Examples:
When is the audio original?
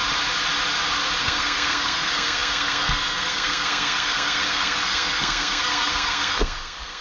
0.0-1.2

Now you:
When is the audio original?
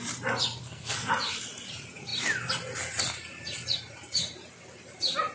0.0-0.6; 1.1-5.3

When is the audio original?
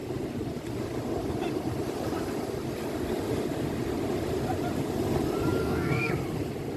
0.0-5.6; 6.1-6.8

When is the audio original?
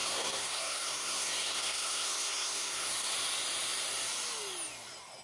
3.1-5.2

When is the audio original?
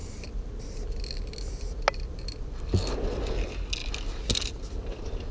0.0-5.3